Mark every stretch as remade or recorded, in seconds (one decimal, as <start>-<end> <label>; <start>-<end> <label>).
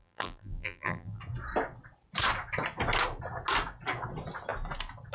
0.0-1.2 remade; 1.2-5.1 recorded